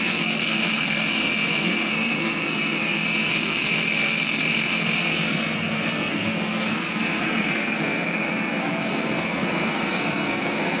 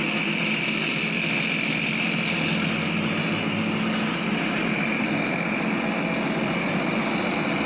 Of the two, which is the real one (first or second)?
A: second